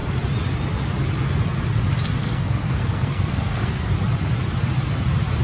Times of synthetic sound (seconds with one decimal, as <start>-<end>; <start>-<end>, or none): 2.2-3.9